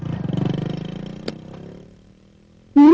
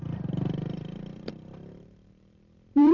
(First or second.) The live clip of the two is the first